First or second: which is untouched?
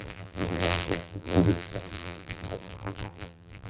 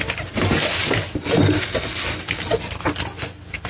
second